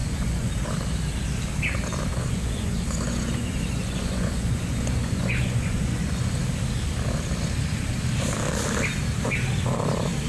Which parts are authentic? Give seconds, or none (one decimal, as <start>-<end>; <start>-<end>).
0.5-2.1; 6.3-10.3